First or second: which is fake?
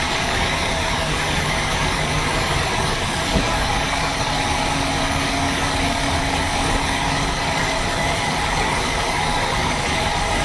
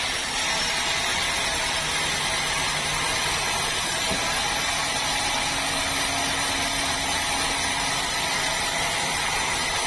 first